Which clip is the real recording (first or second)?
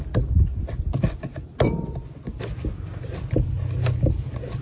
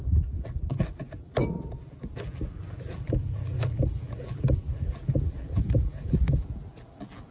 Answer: first